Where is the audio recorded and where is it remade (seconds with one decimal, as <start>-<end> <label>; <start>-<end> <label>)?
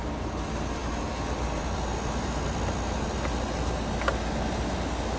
0.0-5.2 recorded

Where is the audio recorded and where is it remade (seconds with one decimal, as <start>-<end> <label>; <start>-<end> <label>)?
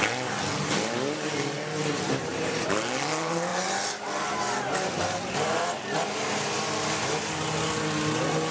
0.0-1.8 recorded; 1.8-2.9 remade; 2.9-3.5 recorded; 3.5-6.0 remade; 6.0-8.5 recorded